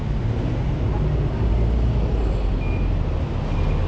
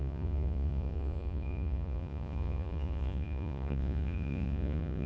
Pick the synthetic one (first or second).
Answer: second